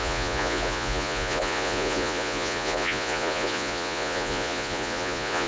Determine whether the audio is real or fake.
fake